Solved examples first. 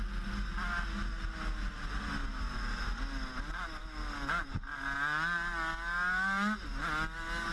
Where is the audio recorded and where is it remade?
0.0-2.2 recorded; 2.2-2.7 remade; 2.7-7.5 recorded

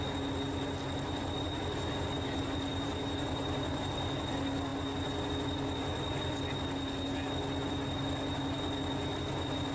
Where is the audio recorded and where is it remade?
0.0-2.7 recorded; 2.7-3.9 remade; 3.9-9.7 recorded

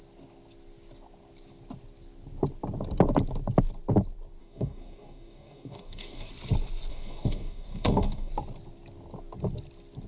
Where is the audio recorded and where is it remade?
0.0-4.4 recorded; 4.4-6.3 remade; 6.3-6.9 recorded; 6.9-8.3 remade; 8.3-10.1 recorded

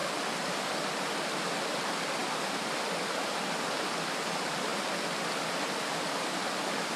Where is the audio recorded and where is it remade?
0.0-7.0 recorded

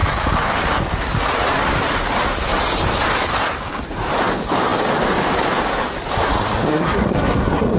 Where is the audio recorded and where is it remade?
0.0-6.7 recorded; 6.7-7.8 remade

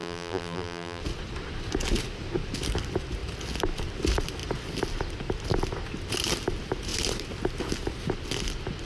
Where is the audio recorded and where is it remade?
0.0-1.0 remade; 1.0-8.9 recorded

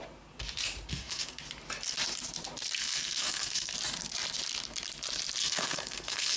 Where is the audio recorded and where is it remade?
0.0-0.9 recorded; 0.9-1.4 remade; 1.4-2.8 recorded; 2.8-3.7 remade; 3.7-5.4 recorded; 5.4-6.4 remade

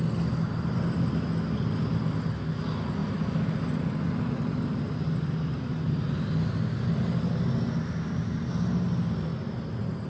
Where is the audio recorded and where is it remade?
0.0-10.1 recorded